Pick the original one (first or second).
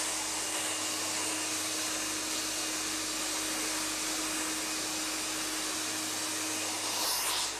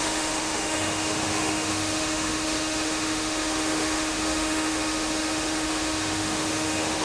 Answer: first